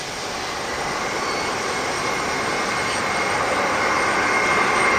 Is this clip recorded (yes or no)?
yes